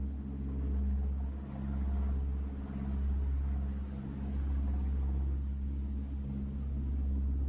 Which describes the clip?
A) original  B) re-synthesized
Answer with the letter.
A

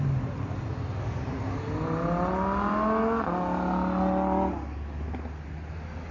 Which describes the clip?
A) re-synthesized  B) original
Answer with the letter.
B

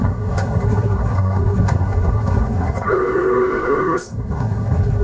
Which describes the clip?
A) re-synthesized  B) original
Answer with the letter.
A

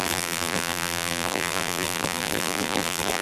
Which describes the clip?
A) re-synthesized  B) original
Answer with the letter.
A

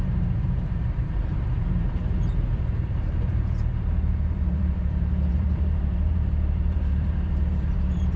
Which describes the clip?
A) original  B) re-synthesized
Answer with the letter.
B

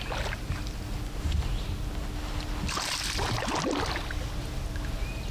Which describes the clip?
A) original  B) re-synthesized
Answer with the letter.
A